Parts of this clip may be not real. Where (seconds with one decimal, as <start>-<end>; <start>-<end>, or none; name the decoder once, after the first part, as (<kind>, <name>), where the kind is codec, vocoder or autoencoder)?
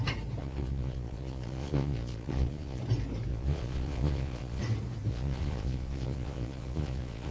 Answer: 0.4-2.8 (vocoder, Vocos); 3.3-4.6; 5.1-7.3